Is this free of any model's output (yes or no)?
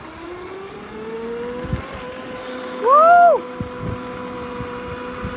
yes